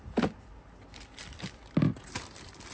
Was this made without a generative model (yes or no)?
yes